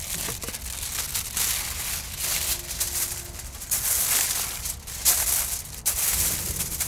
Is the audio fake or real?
real